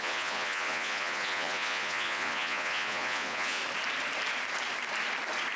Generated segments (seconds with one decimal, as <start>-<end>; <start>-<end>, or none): 0.0-3.6